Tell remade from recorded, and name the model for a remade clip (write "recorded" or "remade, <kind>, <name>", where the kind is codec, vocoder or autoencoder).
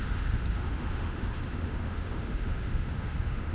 remade, autoencoder, DAC-VAE